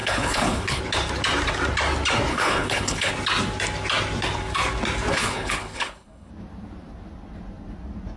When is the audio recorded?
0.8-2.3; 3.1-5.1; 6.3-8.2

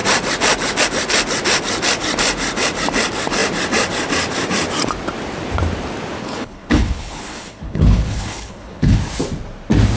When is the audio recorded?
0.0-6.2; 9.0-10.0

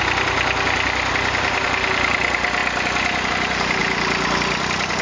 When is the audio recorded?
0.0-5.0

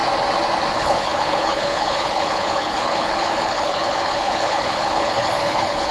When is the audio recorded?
0.0-0.7

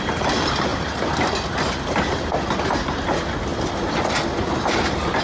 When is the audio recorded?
0.0-5.2